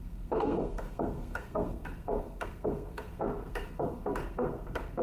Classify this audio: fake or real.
fake